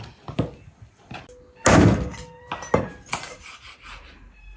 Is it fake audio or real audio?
real